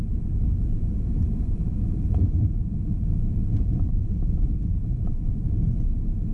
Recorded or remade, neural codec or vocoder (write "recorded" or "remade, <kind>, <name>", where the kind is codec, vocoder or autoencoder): remade, vocoder, BigVGAN v2